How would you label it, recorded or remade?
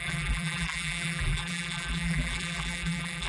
remade